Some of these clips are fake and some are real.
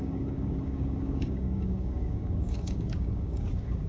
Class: fake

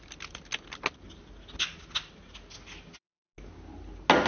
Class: real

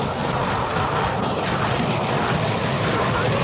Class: real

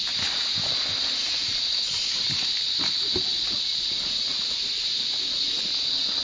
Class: real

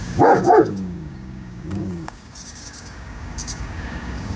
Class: fake